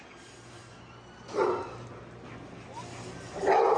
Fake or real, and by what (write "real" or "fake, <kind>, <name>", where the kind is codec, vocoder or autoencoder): real